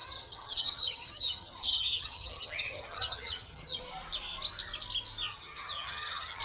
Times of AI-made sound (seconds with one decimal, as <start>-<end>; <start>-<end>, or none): 0.0-3.8; 5.3-6.4